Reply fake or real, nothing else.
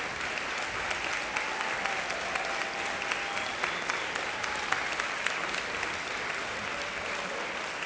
real